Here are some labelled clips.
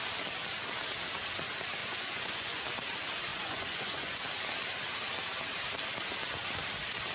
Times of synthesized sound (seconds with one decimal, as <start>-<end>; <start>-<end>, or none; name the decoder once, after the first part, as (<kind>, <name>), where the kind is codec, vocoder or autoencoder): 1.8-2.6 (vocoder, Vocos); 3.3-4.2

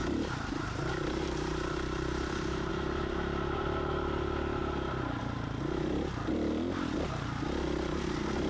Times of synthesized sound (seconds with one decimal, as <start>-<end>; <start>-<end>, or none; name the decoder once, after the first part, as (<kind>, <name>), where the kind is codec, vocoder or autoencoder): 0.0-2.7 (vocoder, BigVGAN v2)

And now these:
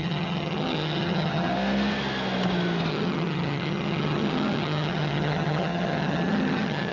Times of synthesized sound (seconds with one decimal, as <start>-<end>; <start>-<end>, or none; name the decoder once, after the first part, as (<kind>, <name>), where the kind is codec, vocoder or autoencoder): 0.0-1.5 (vocoder, HiFi-GAN); 2.9-6.9

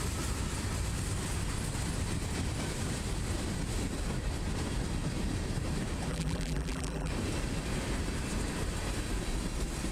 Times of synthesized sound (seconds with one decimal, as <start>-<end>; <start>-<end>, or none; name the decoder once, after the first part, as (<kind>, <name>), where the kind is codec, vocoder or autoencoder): 6.1-7.1 (vocoder, BigVGAN v2)